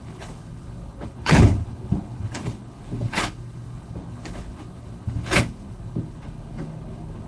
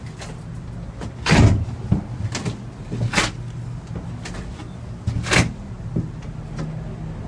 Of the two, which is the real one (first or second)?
second